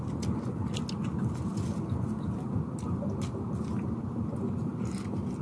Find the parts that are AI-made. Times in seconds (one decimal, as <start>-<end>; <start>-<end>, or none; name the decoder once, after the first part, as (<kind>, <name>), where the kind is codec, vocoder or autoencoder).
none